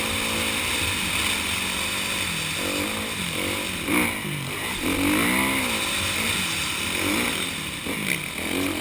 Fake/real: real